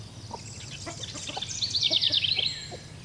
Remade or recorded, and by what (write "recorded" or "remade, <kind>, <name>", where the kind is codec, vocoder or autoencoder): recorded